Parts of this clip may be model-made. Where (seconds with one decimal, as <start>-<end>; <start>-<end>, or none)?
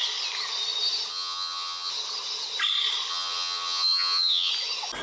1.1-1.9; 3.1-4.5